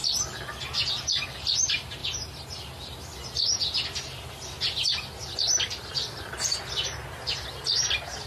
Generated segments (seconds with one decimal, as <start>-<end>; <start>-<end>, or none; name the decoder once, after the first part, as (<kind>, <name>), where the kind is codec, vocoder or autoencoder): none

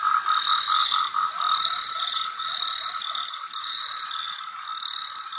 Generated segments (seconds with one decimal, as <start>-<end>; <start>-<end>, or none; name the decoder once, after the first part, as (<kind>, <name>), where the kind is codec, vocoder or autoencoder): none

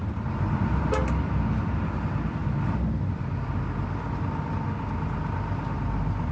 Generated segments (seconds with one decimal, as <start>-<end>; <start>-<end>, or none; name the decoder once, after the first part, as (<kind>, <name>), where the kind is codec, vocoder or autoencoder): none

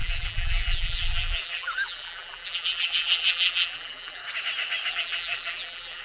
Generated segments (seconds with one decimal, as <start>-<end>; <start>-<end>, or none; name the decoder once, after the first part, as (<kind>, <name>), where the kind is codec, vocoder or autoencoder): 0.0-4.2 (vocoder, BigVGAN v2); 4.9-6.0

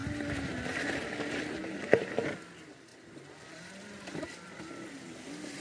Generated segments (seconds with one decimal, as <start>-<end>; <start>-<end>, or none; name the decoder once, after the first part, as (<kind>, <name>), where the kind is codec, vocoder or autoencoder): none

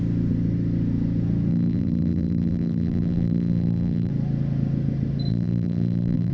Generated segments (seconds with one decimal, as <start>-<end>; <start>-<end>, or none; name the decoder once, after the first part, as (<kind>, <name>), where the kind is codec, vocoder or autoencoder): 1.5-4.1 (vocoder, BigVGAN v2); 5.3-6.3

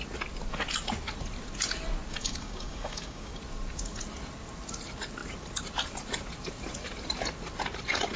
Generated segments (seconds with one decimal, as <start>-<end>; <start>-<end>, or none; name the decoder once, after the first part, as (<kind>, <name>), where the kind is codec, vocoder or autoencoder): 2.2-3.3 (codec, DAC)